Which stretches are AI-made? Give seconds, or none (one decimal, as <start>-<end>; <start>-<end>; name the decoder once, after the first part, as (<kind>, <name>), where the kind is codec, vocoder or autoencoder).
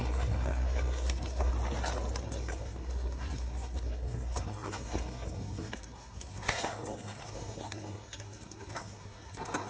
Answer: 0.0-1.5 (codec, SNAC); 2.2-9.7